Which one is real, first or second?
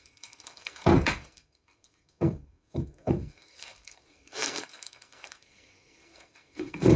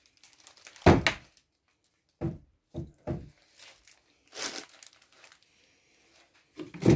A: second